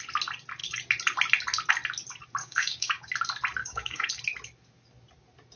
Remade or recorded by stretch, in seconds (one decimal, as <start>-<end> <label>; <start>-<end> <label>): 0.0-2.4 recorded; 2.4-3.1 remade; 3.1-3.6 recorded; 3.6-4.1 remade; 4.1-5.6 recorded